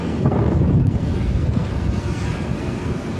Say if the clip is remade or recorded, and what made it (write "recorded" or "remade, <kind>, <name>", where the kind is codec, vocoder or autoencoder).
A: remade, codec, SNAC